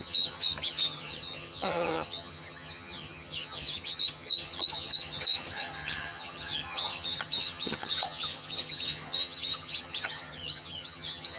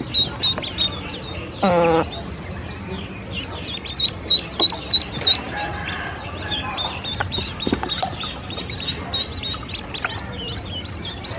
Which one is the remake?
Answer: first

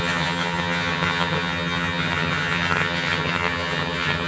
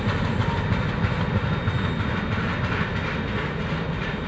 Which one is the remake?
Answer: first